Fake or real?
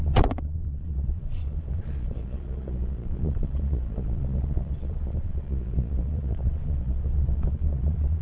fake